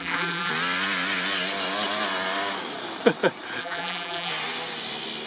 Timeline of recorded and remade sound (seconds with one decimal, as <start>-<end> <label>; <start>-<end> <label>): 0.0-0.5 remade; 0.5-3.6 recorded; 3.6-4.3 remade; 4.3-5.3 recorded